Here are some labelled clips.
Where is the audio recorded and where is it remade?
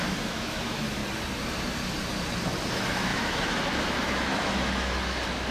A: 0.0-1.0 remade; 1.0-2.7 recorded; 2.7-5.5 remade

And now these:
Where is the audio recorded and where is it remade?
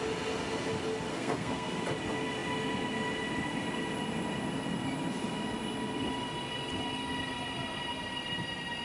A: 0.0-1.1 recorded; 1.1-1.8 remade; 1.8-8.8 recorded